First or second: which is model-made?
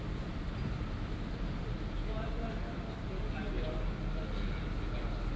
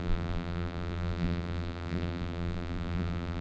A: second